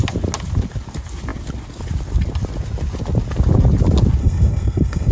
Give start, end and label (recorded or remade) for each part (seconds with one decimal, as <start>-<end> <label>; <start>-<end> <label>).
0.0-4.2 recorded; 4.2-5.1 remade